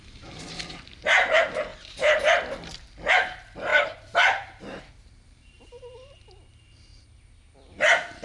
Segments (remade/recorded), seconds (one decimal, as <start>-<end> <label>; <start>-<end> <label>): 0.0-6.9 remade; 6.9-8.2 recorded